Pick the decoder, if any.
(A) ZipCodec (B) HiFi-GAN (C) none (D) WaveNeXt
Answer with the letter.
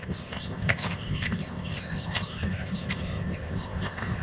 A